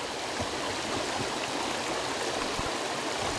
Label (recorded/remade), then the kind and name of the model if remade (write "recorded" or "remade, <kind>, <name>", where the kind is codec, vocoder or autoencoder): recorded